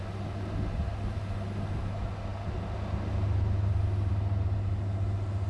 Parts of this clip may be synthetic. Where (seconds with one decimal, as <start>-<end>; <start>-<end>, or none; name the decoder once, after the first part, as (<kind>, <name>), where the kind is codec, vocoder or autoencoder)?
none